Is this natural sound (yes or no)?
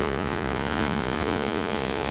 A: no